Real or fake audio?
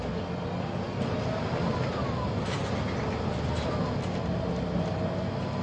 real